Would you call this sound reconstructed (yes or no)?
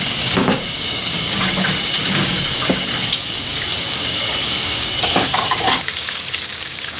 yes